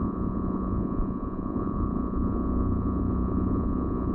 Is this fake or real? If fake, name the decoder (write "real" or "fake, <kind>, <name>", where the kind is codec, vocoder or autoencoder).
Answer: fake, vocoder, Vocos